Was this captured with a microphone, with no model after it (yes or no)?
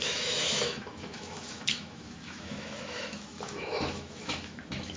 no